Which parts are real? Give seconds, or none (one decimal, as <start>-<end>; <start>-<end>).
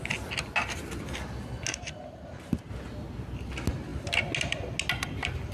0.0-1.7; 2.7-5.5